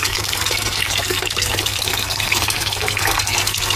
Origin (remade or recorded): remade